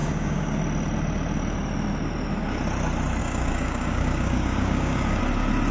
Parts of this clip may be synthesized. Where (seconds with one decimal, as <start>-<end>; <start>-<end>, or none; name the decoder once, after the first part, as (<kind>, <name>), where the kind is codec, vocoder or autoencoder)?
0.0-0.6 (codec, DAC); 3.2-5.2